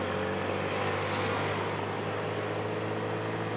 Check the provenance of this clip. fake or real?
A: real